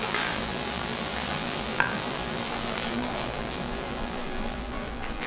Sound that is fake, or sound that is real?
fake